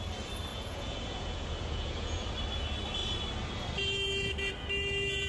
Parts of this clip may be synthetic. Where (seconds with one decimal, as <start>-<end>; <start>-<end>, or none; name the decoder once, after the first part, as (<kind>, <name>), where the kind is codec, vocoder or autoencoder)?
0.5-2.2 (vocoder, Vocos)